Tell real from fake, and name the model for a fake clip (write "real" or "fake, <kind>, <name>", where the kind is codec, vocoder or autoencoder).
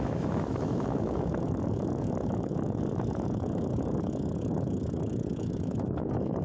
fake, autoencoder, DAC-VAE